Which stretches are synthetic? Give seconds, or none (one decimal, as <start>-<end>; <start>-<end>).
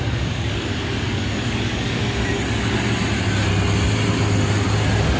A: 0.0-2.0